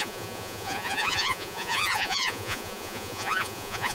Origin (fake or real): fake